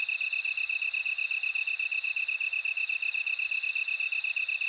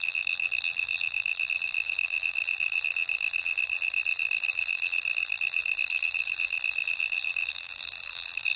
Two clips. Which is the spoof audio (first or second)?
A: second